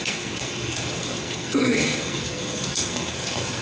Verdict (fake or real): fake